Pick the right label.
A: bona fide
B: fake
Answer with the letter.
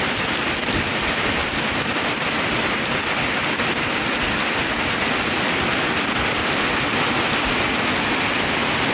A